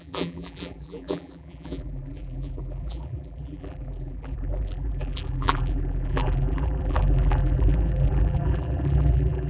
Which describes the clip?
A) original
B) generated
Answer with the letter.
B